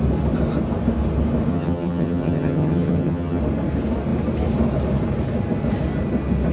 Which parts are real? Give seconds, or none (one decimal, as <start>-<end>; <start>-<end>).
0.0-1.5; 3.4-6.5